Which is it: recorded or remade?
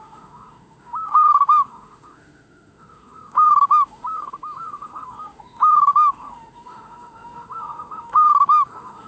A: remade